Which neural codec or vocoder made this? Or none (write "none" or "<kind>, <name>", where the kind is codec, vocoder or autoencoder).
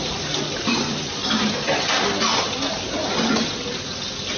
none